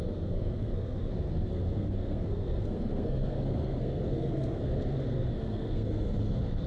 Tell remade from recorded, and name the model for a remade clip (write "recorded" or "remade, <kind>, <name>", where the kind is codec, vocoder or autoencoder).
remade, codec, SNAC